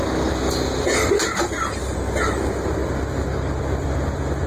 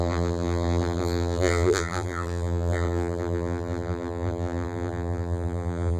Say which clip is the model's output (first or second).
second